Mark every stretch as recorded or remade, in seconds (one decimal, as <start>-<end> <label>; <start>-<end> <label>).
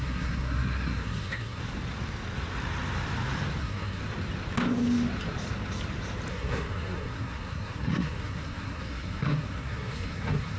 0.0-1.6 remade; 1.6-3.6 recorded; 3.6-4.0 remade; 4.0-6.3 recorded; 6.3-10.6 remade